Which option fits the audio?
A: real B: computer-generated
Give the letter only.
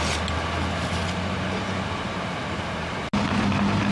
A